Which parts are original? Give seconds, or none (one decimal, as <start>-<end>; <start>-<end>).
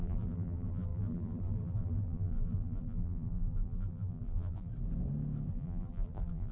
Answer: 4.7-5.5